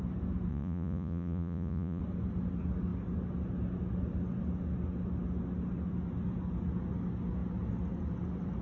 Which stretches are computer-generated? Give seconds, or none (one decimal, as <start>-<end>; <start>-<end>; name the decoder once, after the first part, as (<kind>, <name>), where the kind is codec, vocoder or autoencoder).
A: 0.5-2.0 (vocoder, Vocos)